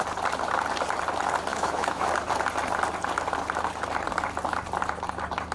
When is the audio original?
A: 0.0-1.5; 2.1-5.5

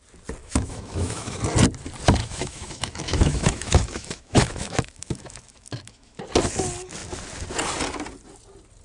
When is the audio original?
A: 0.0-0.4; 1.4-2.2; 6.2-8.8

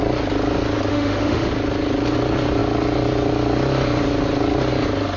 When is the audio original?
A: 0.0-0.9; 1.5-5.2

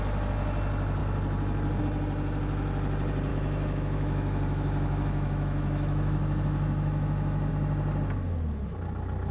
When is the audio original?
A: 0.0-3.3; 7.5-9.3

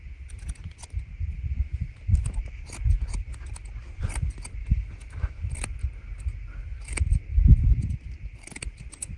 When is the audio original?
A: 0.0-4.6; 5.5-9.2

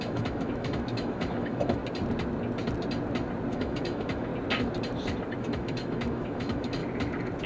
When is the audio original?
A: 1.8-3.5; 4.3-5.4; 6.8-7.5